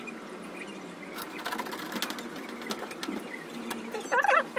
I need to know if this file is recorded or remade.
recorded